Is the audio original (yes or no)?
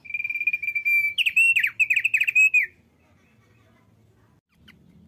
yes